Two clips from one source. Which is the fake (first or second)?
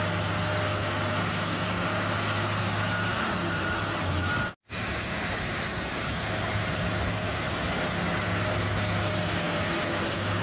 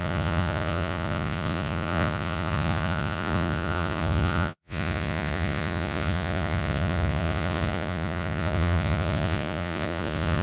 second